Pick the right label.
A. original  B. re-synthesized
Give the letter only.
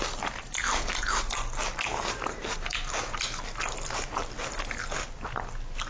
A